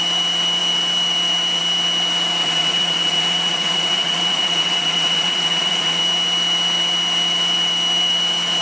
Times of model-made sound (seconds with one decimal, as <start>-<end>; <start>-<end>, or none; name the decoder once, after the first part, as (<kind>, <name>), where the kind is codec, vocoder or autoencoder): 2.4-6.0 (vocoder, WaveNeXt)